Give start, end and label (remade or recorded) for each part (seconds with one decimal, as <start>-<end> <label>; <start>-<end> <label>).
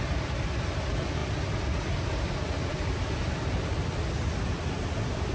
0.0-5.3 recorded